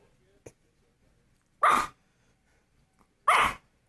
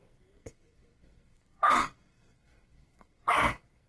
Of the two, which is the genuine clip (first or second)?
first